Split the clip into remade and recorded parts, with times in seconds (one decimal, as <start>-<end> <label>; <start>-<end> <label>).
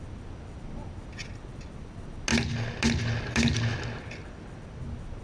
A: 0.0-5.2 recorded